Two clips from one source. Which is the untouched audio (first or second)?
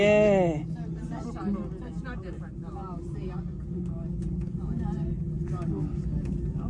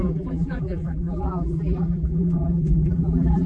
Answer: first